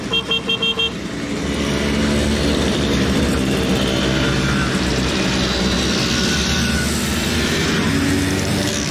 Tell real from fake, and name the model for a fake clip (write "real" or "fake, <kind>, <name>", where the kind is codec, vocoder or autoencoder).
real